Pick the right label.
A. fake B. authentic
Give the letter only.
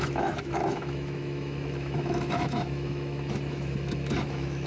A